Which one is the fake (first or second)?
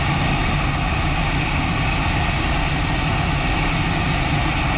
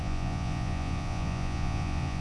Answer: second